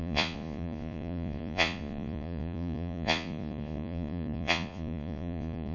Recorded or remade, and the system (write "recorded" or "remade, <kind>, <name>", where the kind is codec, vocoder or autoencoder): remade, vocoder, Vocos